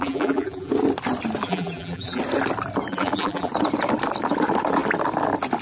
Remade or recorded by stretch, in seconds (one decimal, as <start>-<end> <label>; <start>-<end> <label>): 0.0-0.7 remade; 0.7-1.4 recorded; 1.4-2.2 remade; 2.2-2.9 recorded; 2.9-3.5 remade; 3.5-5.6 recorded

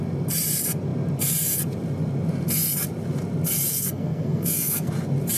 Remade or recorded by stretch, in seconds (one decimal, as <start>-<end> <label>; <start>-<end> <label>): 0.0-3.7 recorded; 3.7-4.9 remade; 4.9-5.4 recorded